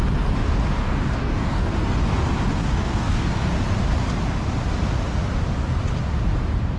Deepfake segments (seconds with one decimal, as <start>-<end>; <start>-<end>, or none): 0.8-1.7; 2.6-3.2